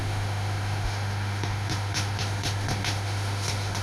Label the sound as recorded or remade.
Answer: remade